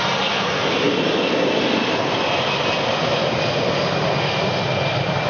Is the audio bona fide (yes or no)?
yes